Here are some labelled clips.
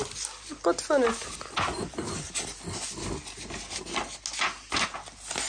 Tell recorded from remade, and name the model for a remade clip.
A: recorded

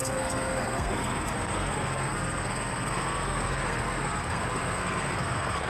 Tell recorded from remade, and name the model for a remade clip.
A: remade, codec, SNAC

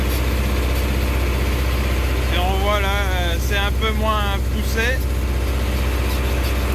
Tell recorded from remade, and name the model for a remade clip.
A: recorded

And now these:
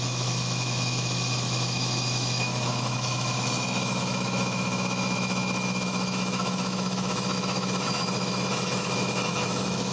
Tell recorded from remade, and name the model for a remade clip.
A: remade, autoencoder, DAC-VAE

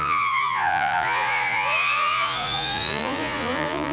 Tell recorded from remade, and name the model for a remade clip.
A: remade, vocoder, Vocos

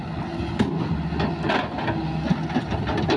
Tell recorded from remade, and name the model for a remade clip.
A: recorded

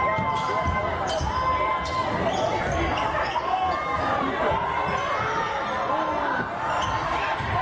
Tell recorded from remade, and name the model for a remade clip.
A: recorded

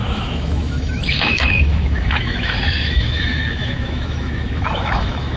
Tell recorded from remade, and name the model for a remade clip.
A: remade, autoencoder, DAC-VAE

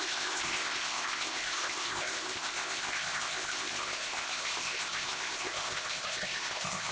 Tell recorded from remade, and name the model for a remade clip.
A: remade, codec, ZipCodec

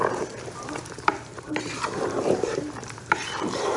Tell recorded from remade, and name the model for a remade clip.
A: remade, vocoder, BigVGAN v2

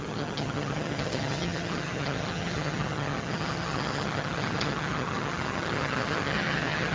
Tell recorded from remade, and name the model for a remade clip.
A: remade, vocoder, HiFi-GAN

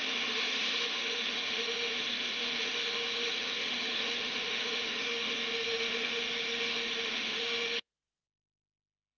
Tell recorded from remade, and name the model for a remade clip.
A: remade, autoencoder, DAC-VAE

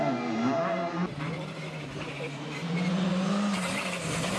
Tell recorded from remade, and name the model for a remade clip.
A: recorded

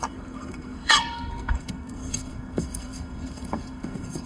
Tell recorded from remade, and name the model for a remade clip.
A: remade, codec, SNAC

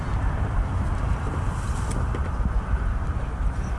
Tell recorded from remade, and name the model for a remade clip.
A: recorded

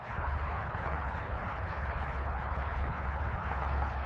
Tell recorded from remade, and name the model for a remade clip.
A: remade, codec, HILCodec